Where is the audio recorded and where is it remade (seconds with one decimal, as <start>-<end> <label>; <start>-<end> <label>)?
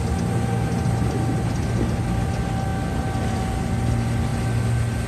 0.0-5.1 recorded